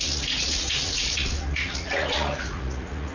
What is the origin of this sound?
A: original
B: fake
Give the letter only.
B